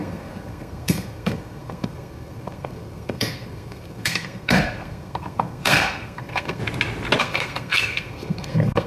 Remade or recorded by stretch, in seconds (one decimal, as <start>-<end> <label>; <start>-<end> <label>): 0.0-6.6 remade; 6.6-7.2 recorded; 7.2-8.9 remade